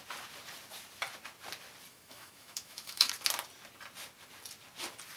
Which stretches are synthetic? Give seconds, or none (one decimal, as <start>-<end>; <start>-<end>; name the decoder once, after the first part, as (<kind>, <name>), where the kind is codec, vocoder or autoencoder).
1.9-3.1 (autoencoder, DAC-VAE)